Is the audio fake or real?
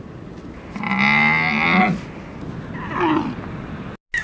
real